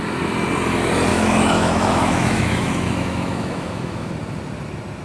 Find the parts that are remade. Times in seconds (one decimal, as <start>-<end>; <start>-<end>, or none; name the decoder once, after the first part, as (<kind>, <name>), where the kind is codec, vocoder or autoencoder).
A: 1.1-4.1 (autoencoder, DAC-VAE)